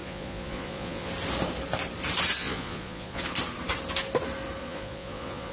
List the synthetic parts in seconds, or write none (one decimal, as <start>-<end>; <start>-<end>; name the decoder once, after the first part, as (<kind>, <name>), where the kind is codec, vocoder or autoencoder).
0.0-1.1 (vocoder, Vocos); 2.4-3.2; 4.6-5.5